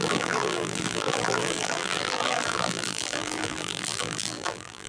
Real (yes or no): no